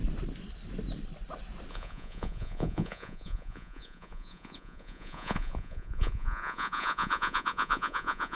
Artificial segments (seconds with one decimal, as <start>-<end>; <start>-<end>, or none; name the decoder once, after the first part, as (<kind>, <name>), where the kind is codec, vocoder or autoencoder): 1.7-8.4 (vocoder, Vocos)